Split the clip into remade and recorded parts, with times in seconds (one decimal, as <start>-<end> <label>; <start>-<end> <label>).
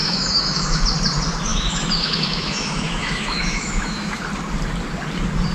0.0-0.8 remade; 0.8-1.5 recorded; 1.5-4.2 remade; 4.2-5.5 recorded